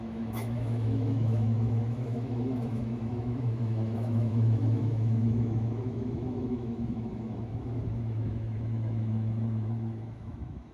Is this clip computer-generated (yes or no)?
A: yes